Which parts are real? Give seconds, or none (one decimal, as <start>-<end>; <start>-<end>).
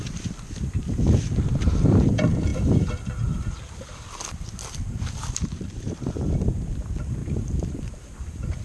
7.2-7.8